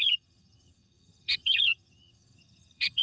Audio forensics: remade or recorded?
remade